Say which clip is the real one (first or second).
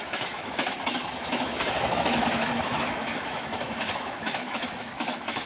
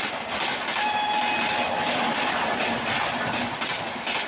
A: second